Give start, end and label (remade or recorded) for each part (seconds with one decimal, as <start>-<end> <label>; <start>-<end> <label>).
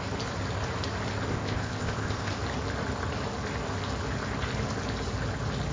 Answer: 0.0-1.3 recorded; 1.3-2.3 remade; 2.3-5.7 recorded